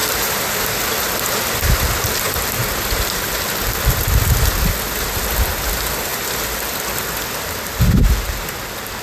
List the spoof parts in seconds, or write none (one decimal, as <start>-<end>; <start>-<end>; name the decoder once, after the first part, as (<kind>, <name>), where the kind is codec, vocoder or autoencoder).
0.0-0.8 (vocoder, BigVGAN v2)